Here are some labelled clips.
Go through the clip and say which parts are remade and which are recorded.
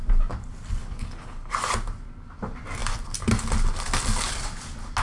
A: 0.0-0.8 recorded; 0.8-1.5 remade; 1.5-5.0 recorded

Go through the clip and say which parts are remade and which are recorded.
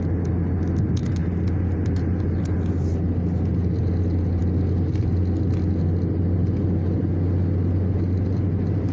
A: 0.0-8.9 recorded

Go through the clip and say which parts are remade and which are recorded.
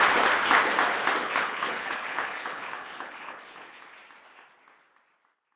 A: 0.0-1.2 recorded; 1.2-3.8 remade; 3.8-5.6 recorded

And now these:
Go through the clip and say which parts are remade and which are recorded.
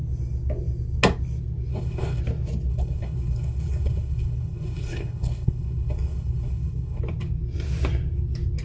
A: 0.0-1.7 recorded; 1.7-2.2 remade; 2.2-2.7 recorded; 2.7-7.0 remade; 7.0-8.6 recorded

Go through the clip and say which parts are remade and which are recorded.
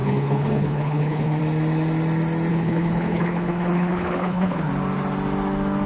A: 0.0-1.4 remade; 1.4-2.5 recorded; 2.5-4.7 remade; 4.7-5.9 recorded